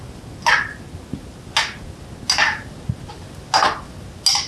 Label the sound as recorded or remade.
recorded